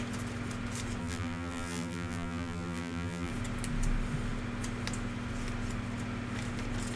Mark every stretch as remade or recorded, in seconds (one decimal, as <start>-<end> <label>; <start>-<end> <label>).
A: 0.0-1.0 recorded; 1.0-3.3 remade; 3.3-7.0 recorded